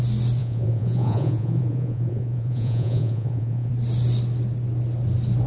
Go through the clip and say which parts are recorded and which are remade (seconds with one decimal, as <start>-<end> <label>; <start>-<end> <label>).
0.0-0.4 recorded; 0.4-3.7 remade; 3.7-5.5 recorded

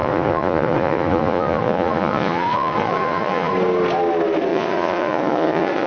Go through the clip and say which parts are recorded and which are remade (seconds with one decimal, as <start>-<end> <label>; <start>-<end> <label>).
0.0-3.5 remade; 3.5-4.5 recorded; 4.5-5.9 remade

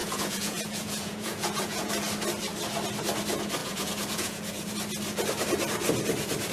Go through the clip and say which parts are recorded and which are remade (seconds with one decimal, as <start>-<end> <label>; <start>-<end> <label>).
0.0-1.9 remade; 1.9-3.6 recorded; 3.6-4.7 remade; 4.7-6.5 recorded

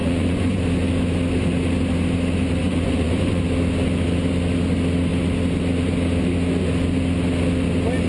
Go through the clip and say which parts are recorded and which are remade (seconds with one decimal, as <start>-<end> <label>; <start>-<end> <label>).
0.0-0.6 remade; 0.6-2.6 recorded; 2.6-3.4 remade; 3.4-8.1 recorded